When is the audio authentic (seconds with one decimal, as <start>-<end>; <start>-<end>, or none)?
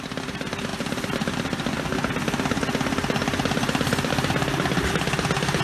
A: 0.0-5.6